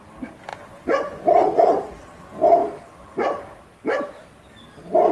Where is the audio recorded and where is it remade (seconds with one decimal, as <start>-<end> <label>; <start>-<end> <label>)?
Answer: 0.0-0.5 recorded; 0.5-1.9 remade; 1.9-5.1 recorded